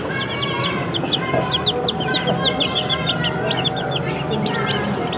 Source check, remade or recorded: recorded